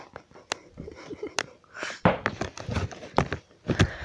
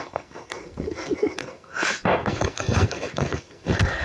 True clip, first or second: first